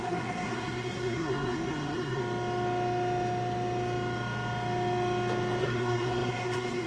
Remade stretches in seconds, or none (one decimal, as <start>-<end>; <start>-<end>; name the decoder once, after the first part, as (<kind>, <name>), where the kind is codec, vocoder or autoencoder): 0.0-2.2 (codec, SNAC); 5.6-6.9